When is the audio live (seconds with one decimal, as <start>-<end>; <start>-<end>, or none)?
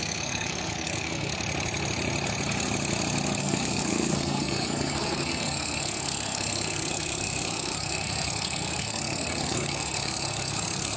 1.3-3.4